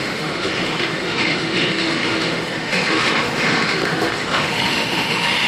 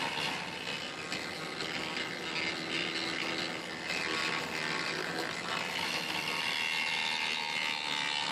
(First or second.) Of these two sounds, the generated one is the first